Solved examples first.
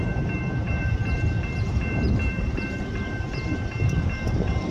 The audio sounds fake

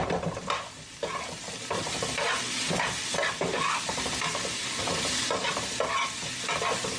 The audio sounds real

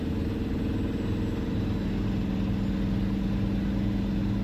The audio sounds real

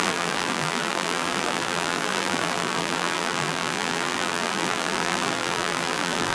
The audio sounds fake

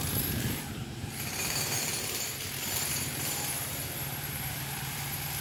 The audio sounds fake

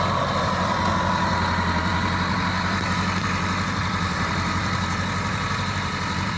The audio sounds fake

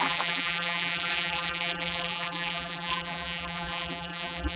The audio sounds fake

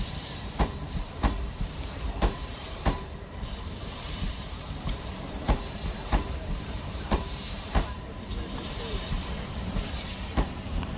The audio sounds fake